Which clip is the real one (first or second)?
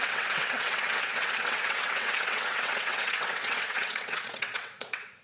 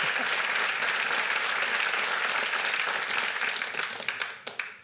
second